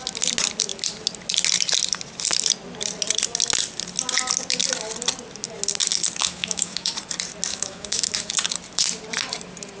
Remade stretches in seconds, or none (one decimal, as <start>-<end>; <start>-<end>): 6.2-6.9; 7.5-8.3